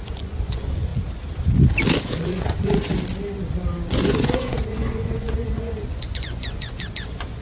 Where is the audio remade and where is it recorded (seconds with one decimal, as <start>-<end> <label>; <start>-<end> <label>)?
0.0-0.9 remade; 0.9-2.0 recorded; 2.0-2.9 remade; 2.9-3.9 recorded; 3.9-7.4 remade